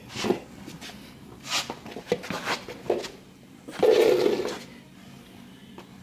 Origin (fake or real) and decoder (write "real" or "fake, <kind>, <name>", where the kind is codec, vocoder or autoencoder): real